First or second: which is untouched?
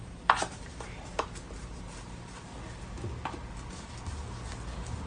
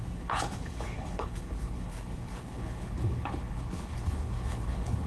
first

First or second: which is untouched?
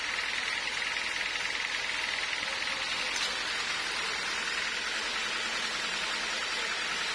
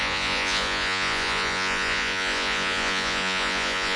first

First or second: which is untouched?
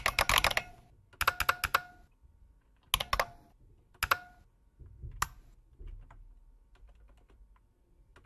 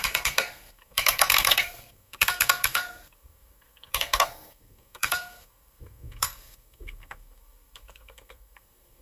first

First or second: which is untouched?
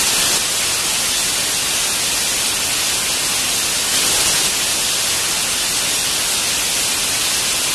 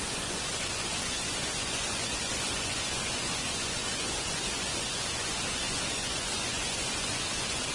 first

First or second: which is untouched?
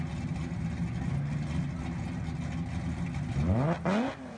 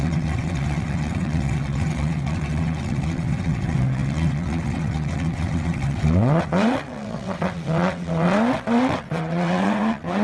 first